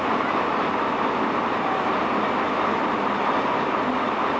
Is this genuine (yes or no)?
yes